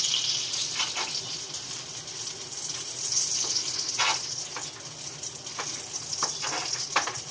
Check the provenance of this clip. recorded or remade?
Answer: recorded